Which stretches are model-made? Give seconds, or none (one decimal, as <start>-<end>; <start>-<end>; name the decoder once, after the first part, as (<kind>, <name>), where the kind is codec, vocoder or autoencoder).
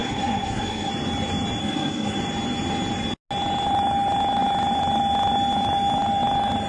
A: 0.0-0.9 (codec, SNAC); 1.6-2.2